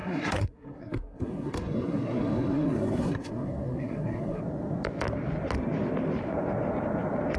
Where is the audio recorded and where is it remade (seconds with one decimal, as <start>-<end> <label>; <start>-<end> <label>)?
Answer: 0.0-4.4 remade; 4.4-7.4 recorded